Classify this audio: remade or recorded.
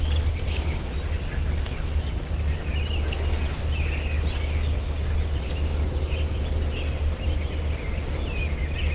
recorded